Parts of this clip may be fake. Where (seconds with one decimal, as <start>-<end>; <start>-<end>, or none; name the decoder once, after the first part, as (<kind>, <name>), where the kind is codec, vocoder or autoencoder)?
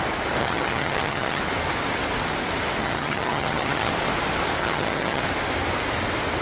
0.4-1.4 (vocoder, HiFi-GAN); 2.8-3.9; 4.6-5.2